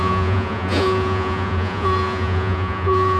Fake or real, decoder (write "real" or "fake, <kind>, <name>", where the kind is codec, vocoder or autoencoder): fake, vocoder, Vocos